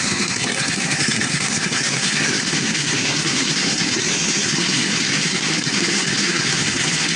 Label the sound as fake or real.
fake